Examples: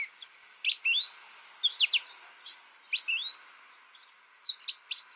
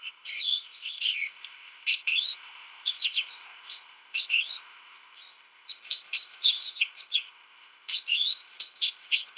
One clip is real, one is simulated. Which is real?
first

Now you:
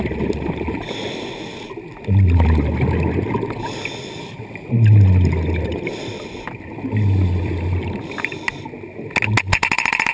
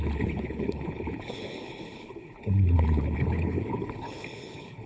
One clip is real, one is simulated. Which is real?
first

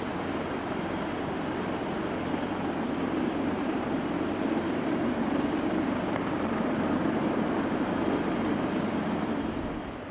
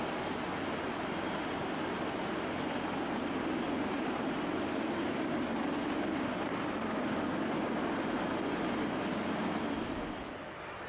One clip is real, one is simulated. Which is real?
second